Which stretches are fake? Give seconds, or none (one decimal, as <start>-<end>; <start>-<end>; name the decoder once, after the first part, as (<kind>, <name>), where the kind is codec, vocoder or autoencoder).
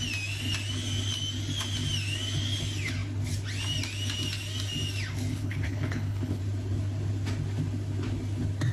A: 5.3-6.4 (codec, HILCodec)